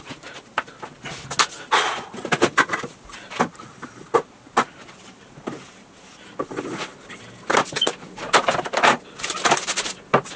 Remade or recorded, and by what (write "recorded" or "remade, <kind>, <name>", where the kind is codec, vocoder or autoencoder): recorded